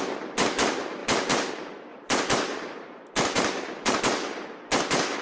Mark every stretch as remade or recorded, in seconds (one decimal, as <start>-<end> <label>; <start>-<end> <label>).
0.0-1.0 recorded; 1.0-1.5 remade; 1.5-1.9 recorded; 1.9-4.0 remade; 4.0-5.2 recorded